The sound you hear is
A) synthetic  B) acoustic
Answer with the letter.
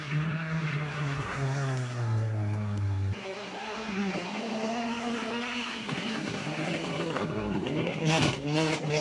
A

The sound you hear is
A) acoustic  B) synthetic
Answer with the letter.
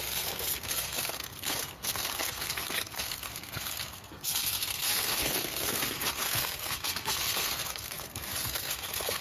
B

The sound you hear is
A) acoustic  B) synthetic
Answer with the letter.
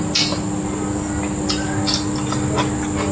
A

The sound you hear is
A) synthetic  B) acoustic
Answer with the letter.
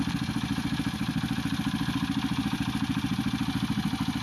B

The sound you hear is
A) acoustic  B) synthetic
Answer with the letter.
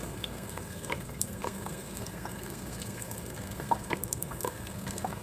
B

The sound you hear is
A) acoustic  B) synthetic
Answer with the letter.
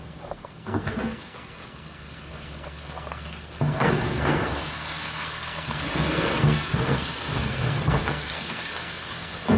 B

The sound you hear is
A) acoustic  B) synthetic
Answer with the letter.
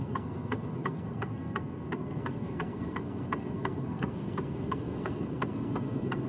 B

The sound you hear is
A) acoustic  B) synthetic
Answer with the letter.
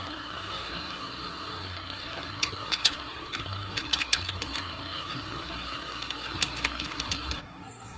B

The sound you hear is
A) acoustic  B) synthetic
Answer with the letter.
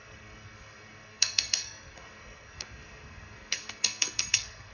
B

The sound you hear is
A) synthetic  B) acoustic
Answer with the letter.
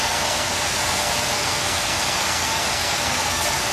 A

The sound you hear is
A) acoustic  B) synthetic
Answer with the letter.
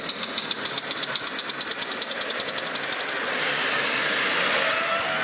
A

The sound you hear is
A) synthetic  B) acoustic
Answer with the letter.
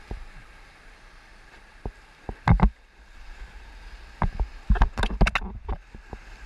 B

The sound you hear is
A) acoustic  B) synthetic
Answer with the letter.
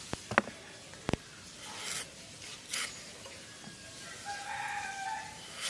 A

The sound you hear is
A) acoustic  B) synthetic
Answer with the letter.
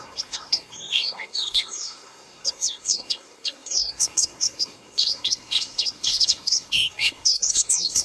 B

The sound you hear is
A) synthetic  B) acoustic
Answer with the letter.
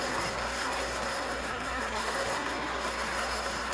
A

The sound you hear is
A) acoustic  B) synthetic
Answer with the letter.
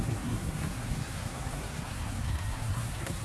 B